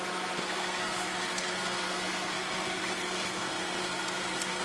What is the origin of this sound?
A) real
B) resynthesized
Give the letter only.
B